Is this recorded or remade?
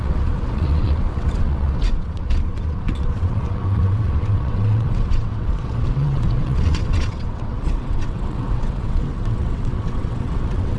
remade